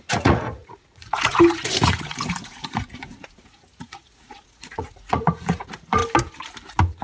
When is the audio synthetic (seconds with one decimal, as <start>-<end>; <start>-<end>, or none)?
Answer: 0.0-6.0